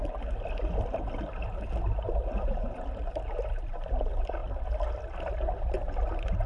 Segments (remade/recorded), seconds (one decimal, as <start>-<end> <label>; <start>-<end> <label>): 0.0-6.5 recorded